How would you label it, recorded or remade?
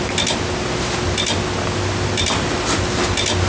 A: recorded